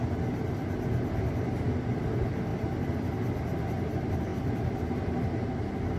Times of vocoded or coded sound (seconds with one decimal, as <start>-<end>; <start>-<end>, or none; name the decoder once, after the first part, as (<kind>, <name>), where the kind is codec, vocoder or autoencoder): 2.5-3.1 (vocoder, BigVGAN v2)